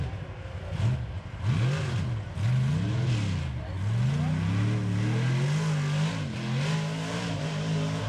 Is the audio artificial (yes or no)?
no